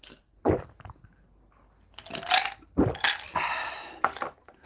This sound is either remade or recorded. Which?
recorded